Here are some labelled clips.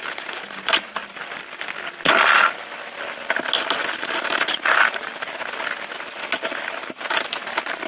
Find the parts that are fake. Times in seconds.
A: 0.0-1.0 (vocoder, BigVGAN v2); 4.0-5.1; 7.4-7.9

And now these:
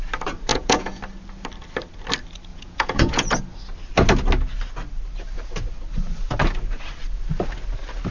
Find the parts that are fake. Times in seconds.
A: 0.5-1.0 (vocoder, Vocos); 2.5-3.4

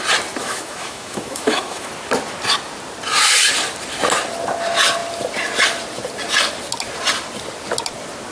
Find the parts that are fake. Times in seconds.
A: 0.4-1.9 (autoencoder, DAC-VAE)

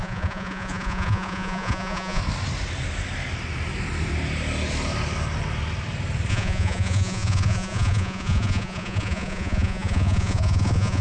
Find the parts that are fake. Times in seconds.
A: 0.0-2.2 (vocoder, Vocos); 6.3-11.0

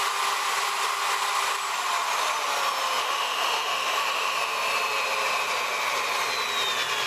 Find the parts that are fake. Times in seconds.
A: 3.0-4.4 (autoencoder, DAC-VAE)

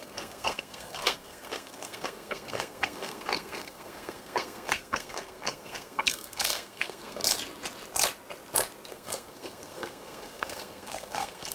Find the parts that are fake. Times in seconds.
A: 0.0-7.2 (codec, SNAC); 8.9-11.5